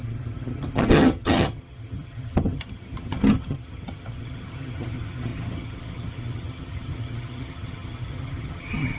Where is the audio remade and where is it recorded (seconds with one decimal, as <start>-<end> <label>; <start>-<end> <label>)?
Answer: 0.0-9.0 remade